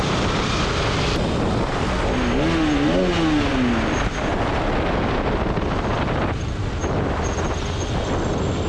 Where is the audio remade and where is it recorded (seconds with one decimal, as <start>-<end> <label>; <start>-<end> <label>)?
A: 0.0-0.5 remade; 0.5-8.7 recorded